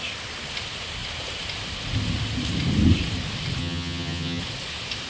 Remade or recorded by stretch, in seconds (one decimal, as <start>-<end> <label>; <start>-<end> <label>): 0.0-3.6 recorded; 3.6-4.4 remade; 4.4-5.1 recorded

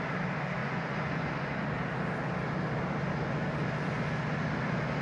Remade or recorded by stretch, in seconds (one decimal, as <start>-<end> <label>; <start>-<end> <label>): 0.0-0.6 recorded; 0.6-1.7 remade; 1.7-5.0 recorded